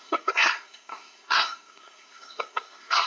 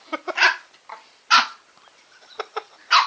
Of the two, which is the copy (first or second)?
first